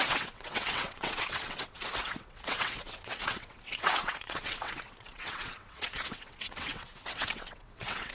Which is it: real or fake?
fake